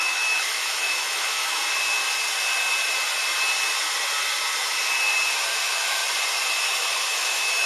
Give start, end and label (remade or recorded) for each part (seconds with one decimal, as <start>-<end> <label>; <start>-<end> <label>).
0.0-1.6 remade; 1.6-5.5 recorded; 5.5-6.0 remade; 6.0-6.6 recorded; 6.6-7.7 remade